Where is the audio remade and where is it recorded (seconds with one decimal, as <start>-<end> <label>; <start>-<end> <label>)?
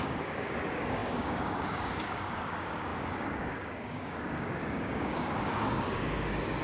0.0-6.6 remade